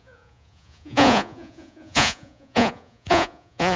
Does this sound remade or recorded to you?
remade